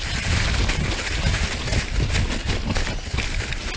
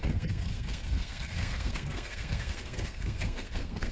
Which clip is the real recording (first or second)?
first